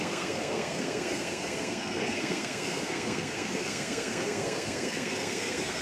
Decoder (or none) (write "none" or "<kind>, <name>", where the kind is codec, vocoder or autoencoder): codec, SNAC